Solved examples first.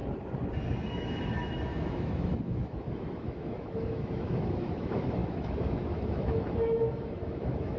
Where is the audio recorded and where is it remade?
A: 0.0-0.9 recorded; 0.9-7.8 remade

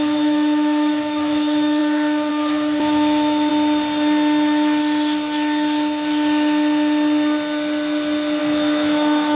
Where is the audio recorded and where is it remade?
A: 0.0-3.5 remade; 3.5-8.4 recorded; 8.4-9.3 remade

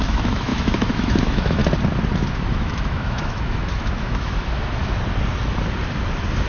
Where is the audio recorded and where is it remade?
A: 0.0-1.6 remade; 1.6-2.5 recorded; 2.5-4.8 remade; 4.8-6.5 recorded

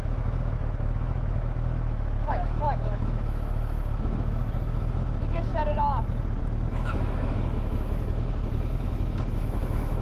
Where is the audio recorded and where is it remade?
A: 0.0-5.5 remade; 5.5-6.4 recorded; 6.4-10.0 remade

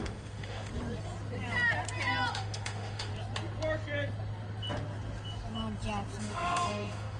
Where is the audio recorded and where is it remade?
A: 0.0-0.7 remade; 0.7-2.3 recorded; 2.3-3.1 remade; 3.1-6.2 recorded; 6.2-7.2 remade

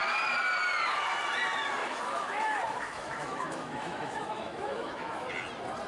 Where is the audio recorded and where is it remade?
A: 0.0-1.8 recorded; 1.8-5.3 remade; 5.3-5.9 recorded